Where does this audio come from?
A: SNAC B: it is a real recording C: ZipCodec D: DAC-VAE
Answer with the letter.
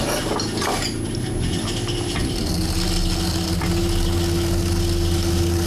B